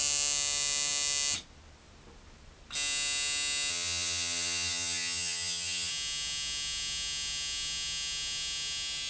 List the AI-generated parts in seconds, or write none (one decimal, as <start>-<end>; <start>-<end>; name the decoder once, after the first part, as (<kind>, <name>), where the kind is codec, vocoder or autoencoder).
3.7-5.9 (vocoder, HiFi-GAN)